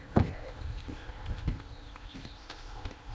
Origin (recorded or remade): remade